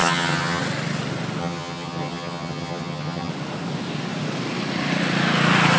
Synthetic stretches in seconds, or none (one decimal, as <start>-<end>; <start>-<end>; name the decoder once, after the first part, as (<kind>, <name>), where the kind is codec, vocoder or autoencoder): 0.0-0.6 (vocoder, HiFi-GAN); 1.4-3.3